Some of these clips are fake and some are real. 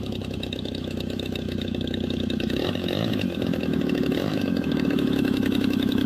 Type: fake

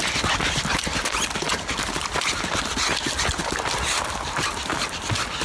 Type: real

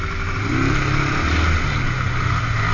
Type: real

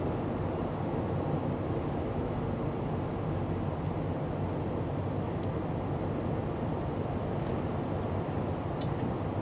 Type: real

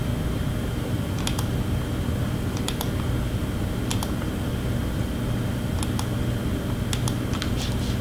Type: real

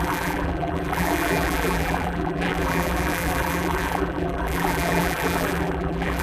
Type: fake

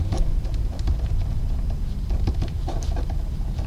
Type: fake